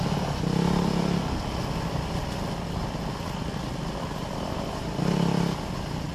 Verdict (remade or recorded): recorded